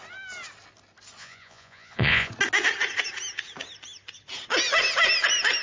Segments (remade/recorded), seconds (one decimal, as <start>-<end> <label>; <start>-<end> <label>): 0.0-1.2 recorded; 1.2-2.3 remade; 2.3-5.6 recorded